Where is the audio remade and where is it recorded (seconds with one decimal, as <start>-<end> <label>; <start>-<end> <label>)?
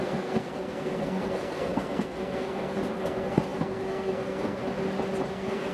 0.0-4.6 remade; 4.6-5.3 recorded; 5.3-5.7 remade